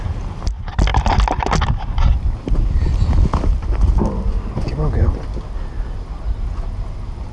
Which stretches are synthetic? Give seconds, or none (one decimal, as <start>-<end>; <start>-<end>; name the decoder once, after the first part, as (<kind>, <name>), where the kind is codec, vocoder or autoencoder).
none